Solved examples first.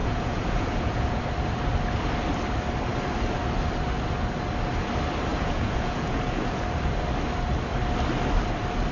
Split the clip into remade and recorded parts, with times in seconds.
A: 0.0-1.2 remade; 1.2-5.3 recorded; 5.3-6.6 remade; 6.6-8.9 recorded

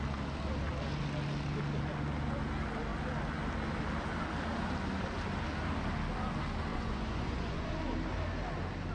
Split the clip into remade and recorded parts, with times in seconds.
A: 0.0-6.7 recorded; 6.7-7.7 remade; 7.7-8.9 recorded

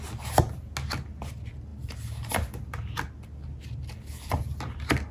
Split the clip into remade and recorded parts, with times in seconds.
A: 0.0-5.1 recorded